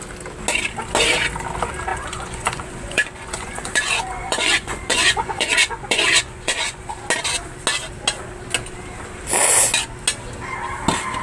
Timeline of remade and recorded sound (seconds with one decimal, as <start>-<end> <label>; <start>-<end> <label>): 0.0-1.9 recorded; 1.9-7.0 remade; 7.0-11.2 recorded